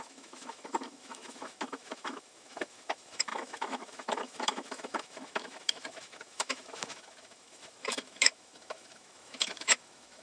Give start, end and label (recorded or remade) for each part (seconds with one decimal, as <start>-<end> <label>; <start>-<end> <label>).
0.0-10.2 remade